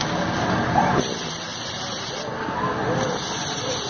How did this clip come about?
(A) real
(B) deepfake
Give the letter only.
A